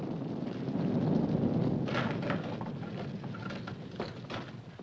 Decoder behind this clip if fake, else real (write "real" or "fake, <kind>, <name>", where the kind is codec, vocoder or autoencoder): real